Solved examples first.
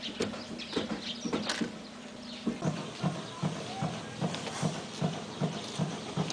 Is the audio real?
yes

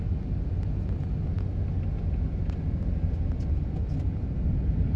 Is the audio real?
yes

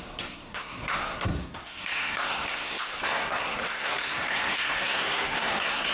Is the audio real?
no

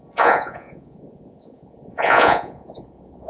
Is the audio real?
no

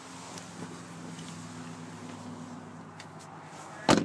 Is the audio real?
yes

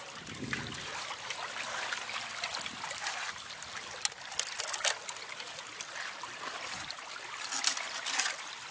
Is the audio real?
yes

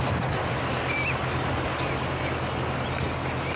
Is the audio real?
yes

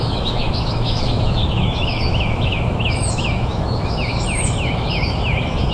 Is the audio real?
no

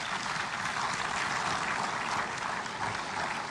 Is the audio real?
yes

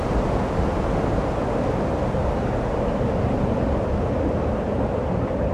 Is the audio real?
yes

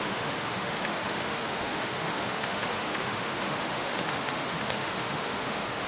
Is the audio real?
no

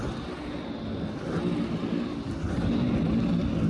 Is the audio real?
yes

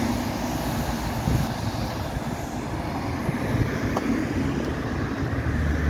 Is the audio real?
yes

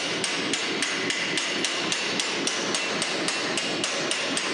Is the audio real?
yes